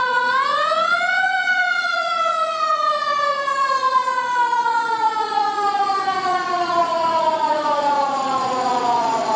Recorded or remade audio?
remade